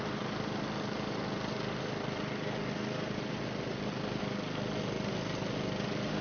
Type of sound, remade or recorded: recorded